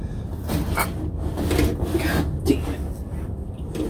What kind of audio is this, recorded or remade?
recorded